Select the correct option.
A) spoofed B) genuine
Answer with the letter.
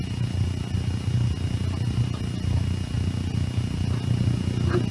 B